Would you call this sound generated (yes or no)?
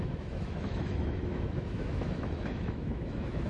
yes